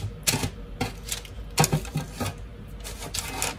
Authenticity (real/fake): real